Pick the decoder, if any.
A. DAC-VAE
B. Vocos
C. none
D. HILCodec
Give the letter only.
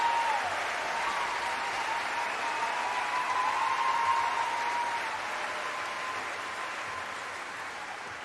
C